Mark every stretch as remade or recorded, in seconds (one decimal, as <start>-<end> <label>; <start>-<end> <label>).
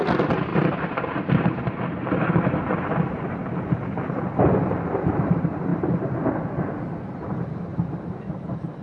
0.0-0.5 recorded; 0.5-1.5 remade; 1.5-8.8 recorded